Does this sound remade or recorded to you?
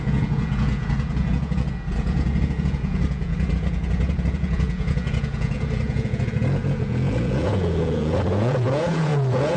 remade